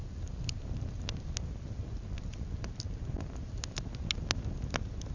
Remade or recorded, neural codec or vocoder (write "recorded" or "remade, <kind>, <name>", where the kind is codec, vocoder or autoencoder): recorded